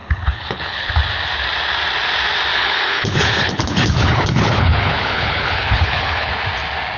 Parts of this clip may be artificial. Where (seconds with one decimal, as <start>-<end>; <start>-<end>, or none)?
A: 0.0-0.9; 2.5-6.3